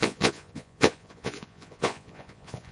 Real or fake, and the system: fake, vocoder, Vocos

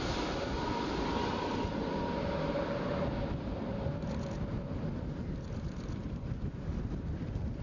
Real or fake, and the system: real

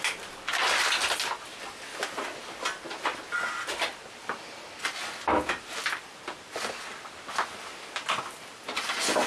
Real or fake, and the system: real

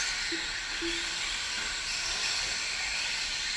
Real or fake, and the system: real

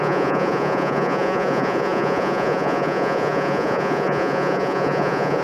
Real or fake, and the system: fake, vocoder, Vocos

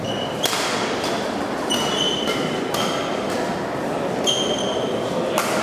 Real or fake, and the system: real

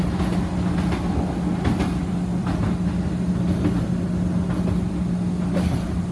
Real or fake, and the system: real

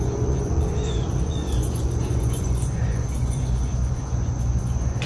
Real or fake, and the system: fake, vocoder, Vocos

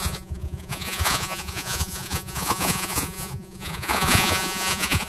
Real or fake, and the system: fake, vocoder, Vocos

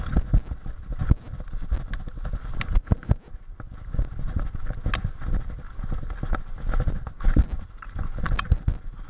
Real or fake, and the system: real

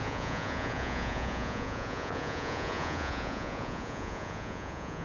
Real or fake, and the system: fake, vocoder, Vocos